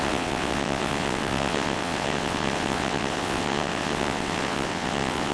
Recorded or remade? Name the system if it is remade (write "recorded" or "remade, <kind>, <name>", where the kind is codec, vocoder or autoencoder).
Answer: remade, vocoder, WaveNeXt